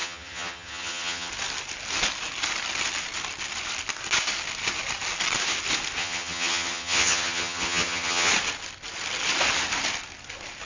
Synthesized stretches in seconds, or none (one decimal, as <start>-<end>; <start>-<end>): 0.0-1.3; 6.0-8.3